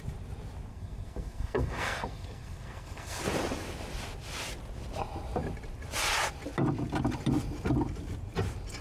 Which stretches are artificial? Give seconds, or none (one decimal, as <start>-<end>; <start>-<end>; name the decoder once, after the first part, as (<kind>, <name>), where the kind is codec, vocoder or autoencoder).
0.7-3.2 (codec, SNAC)